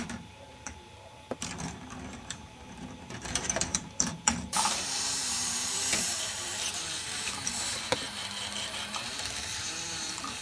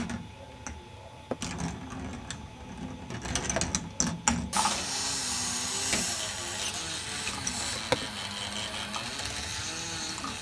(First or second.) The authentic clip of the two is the second